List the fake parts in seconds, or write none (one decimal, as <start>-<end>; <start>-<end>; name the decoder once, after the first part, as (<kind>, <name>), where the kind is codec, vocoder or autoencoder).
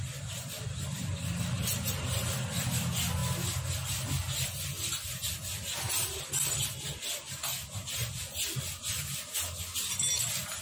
none